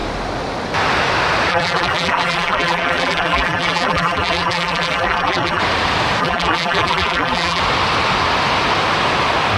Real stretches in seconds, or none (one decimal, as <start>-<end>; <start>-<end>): 0.0-1.5; 5.6-6.2; 7.6-9.6